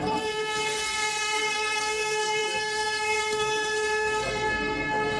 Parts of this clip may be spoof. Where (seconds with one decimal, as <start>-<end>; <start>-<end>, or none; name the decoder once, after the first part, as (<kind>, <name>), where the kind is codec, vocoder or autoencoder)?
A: 0.0-5.2 (codec, SNAC)